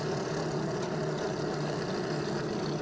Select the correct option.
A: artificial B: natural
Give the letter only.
B